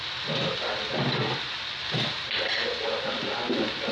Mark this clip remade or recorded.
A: recorded